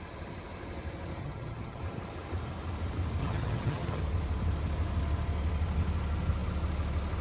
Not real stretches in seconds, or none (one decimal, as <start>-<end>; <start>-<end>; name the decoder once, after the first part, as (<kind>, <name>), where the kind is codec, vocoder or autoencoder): 1.2-1.8 (vocoder, HiFi-GAN); 3.2-4.0